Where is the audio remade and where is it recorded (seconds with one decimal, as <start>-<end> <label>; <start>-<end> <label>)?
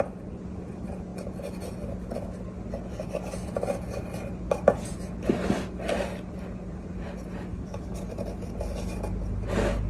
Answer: 0.0-7.5 recorded; 7.5-8.0 remade; 8.0-9.9 recorded